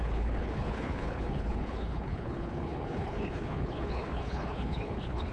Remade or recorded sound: remade